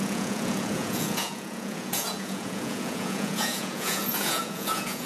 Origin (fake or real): fake